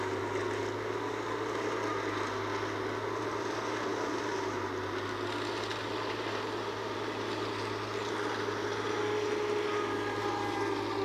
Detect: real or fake real